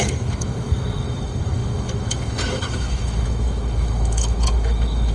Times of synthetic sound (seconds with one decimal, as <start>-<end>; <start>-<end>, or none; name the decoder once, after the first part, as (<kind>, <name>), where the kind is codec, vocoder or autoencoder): 0.0-5.1 (autoencoder, DAC-VAE)